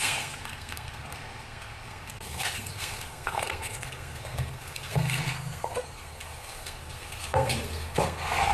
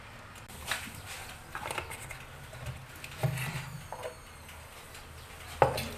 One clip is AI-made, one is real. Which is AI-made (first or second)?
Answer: first